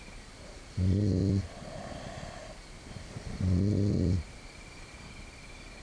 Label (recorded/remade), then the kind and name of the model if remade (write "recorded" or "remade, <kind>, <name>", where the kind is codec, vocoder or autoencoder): recorded